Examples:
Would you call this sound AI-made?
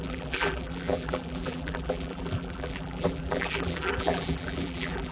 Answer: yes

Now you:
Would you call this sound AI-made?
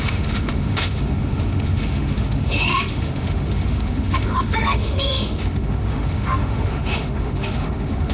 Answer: yes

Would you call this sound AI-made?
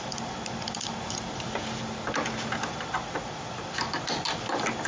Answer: no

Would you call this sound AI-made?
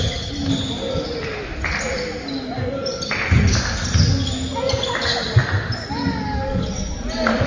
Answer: no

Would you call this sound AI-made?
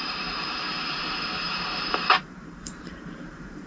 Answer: yes